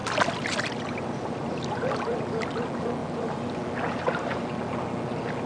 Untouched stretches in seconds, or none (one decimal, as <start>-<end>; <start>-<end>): 2.5-3.0; 3.6-5.5